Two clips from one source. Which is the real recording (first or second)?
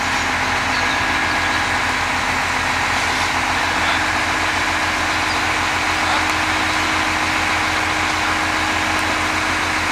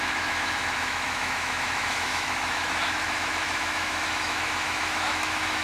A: first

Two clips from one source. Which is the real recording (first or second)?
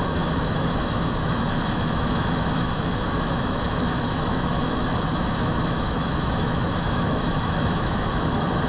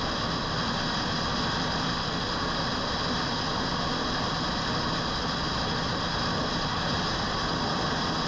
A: second